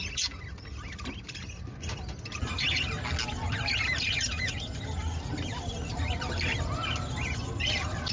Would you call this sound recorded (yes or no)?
yes